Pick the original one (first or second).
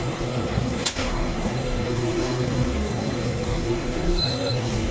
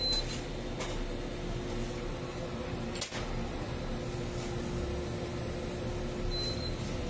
second